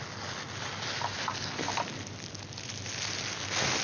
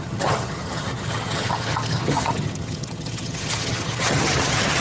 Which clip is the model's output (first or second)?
second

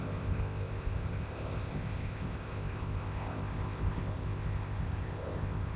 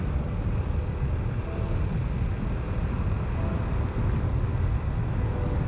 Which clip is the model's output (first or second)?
first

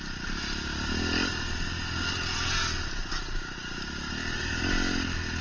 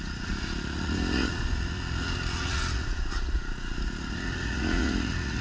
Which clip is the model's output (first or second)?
second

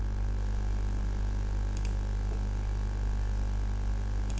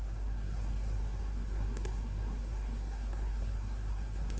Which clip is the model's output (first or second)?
second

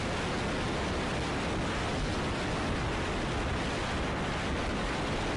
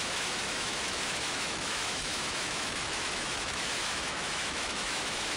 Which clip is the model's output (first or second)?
second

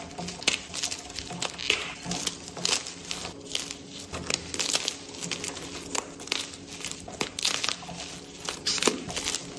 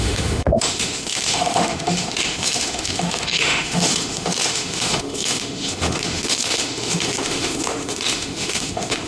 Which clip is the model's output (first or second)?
second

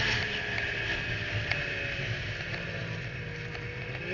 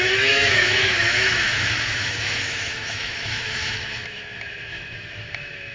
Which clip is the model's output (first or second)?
second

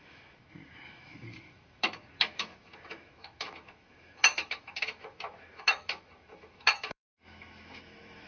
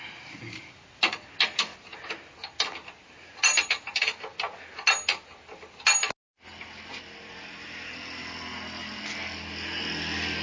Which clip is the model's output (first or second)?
first